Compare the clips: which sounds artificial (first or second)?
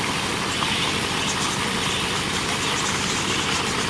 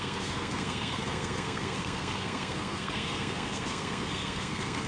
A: second